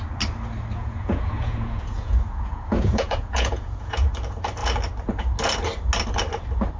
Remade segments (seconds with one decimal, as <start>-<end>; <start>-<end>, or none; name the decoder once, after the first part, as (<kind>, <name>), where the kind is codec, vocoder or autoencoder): 0.7-4.1 (vocoder, Vocos)